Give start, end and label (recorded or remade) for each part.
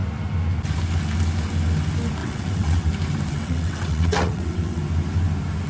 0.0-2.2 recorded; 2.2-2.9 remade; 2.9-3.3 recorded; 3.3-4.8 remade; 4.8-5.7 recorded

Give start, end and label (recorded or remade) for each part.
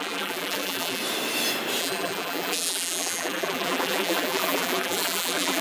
0.0-1.0 remade; 1.0-1.8 recorded; 1.8-5.6 remade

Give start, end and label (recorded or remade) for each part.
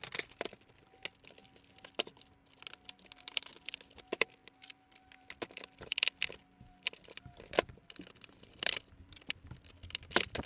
0.0-4.4 recorded; 4.4-9.2 remade; 9.2-10.5 recorded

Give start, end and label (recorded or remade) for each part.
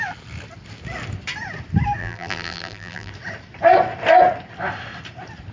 0.0-2.0 recorded; 2.0-3.1 remade; 3.1-5.5 recorded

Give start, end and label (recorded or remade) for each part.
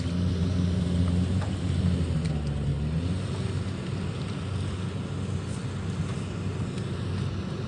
0.0-0.4 recorded; 0.4-2.3 remade; 2.3-7.7 recorded